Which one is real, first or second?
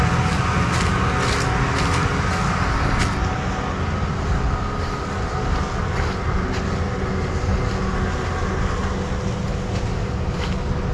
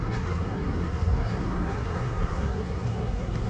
first